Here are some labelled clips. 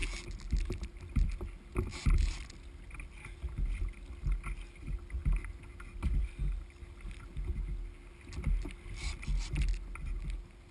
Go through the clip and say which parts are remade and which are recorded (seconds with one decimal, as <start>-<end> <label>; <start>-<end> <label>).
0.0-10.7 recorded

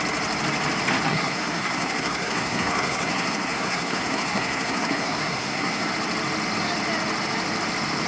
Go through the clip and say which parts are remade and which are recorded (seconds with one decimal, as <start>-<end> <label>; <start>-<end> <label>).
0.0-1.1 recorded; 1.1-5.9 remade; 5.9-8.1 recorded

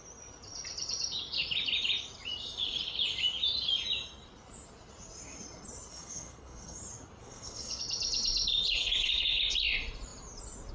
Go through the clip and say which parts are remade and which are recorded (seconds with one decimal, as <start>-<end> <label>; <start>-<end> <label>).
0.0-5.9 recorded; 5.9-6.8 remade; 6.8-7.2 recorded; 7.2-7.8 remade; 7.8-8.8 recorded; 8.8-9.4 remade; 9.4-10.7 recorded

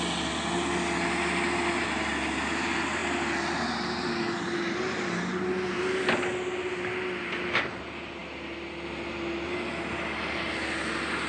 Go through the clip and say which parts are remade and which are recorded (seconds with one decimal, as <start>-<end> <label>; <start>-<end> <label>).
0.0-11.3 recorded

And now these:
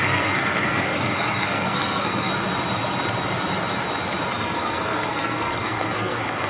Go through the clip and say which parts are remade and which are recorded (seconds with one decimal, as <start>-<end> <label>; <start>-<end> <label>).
0.0-2.3 remade; 2.3-4.3 recorded; 4.3-6.5 remade

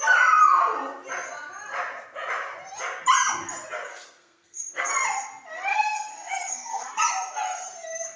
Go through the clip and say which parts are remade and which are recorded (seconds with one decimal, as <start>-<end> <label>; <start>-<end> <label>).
0.0-3.9 recorded; 3.9-4.9 remade; 4.9-5.7 recorded; 5.7-7.0 remade; 7.0-8.2 recorded

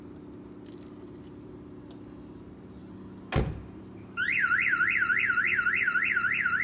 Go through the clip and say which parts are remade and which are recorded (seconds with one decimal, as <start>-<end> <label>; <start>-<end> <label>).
0.0-6.6 recorded

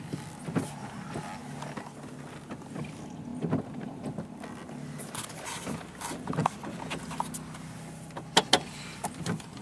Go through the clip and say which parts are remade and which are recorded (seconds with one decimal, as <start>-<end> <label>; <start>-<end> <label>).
0.0-9.6 recorded